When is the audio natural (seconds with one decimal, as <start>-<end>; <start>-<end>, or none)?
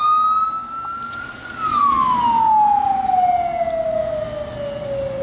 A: 0.0-5.2